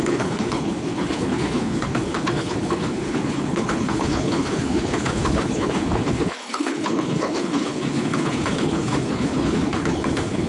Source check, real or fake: fake